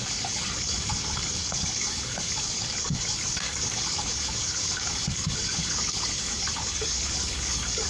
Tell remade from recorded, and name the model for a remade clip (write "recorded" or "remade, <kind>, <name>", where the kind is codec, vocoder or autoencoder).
remade, codec, DAC